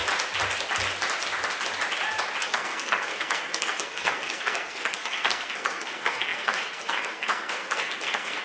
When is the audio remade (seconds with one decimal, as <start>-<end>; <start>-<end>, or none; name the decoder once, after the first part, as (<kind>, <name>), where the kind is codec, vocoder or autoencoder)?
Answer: 2.4-8.4 (codec, SNAC)